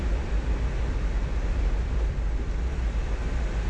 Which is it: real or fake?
real